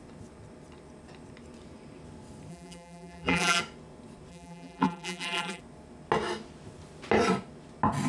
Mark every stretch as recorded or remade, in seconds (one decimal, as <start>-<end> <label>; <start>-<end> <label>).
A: 0.0-2.5 recorded; 2.5-3.6 remade; 3.6-4.3 recorded; 4.3-5.6 remade; 5.6-8.1 recorded